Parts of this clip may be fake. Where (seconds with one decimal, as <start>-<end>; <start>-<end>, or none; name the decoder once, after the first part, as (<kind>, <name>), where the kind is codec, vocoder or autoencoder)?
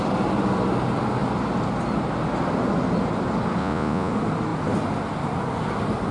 3.6-4.1 (vocoder, Vocos)